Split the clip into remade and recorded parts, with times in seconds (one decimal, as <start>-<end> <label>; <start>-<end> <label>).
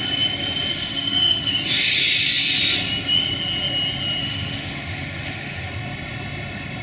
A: 0.0-0.7 recorded; 0.7-1.5 remade; 1.5-4.2 recorded; 4.2-5.7 remade; 5.7-6.8 recorded